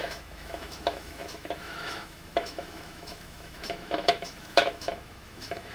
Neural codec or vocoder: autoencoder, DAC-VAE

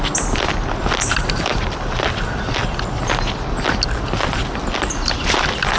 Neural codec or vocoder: none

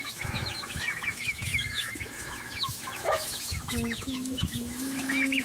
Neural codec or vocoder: autoencoder, DAC-VAE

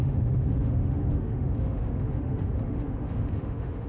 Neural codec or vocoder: autoencoder, DAC-VAE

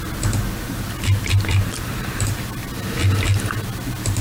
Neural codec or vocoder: none